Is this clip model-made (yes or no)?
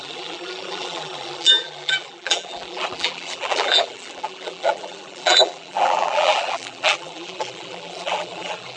yes